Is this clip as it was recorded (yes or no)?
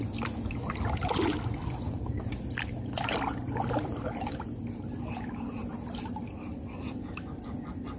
no